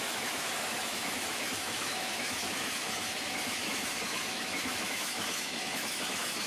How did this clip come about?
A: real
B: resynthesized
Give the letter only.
B